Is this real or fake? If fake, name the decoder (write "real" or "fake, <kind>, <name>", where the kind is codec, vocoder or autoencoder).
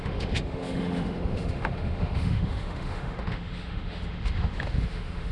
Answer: fake, autoencoder, DAC-VAE